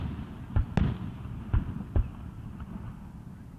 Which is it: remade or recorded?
recorded